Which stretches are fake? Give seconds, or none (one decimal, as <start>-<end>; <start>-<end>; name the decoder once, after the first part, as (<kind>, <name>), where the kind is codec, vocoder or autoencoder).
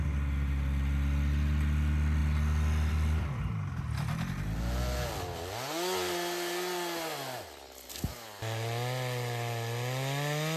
2.2-3.4 (vocoder, BigVGAN v2)